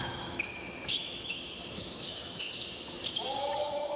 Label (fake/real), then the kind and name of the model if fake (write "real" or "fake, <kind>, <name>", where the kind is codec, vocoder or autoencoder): fake, autoencoder, DAC-VAE